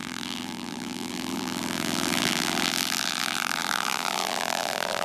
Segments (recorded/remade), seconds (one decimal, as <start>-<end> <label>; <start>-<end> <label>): 0.0-5.0 remade